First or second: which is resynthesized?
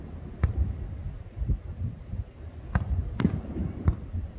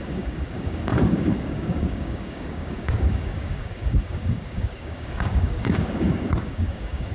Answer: second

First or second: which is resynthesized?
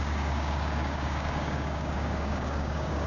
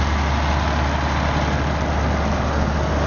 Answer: first